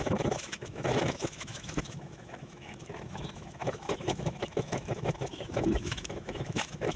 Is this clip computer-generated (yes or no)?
yes